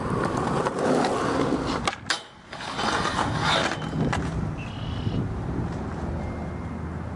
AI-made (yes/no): no